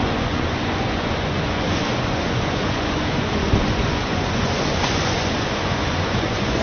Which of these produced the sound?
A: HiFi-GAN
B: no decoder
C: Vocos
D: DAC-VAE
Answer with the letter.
C